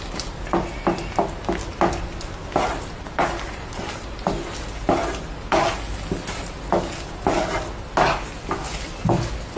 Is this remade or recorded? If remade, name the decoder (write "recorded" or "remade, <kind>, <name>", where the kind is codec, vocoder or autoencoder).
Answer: recorded